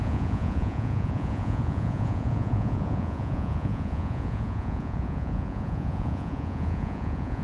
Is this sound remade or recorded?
remade